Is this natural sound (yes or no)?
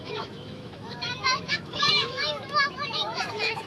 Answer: no